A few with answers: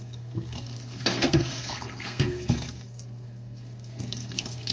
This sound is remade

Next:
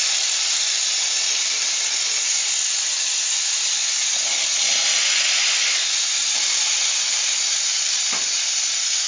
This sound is recorded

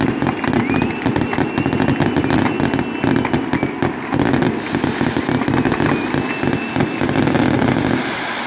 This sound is recorded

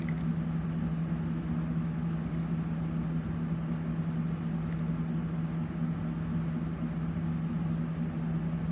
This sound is recorded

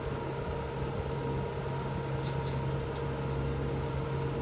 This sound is recorded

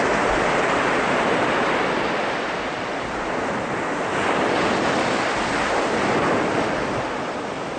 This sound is recorded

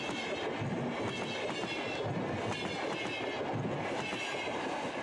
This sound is recorded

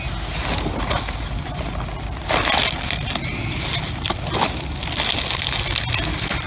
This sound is recorded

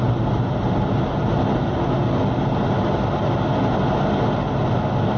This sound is recorded